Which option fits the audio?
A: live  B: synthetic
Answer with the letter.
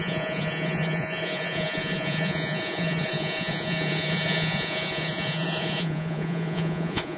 B